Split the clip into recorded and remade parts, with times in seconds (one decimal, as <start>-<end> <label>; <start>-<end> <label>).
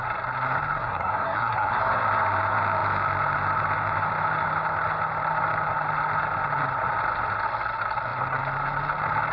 0.0-0.8 recorded; 0.8-1.8 remade; 1.8-9.3 recorded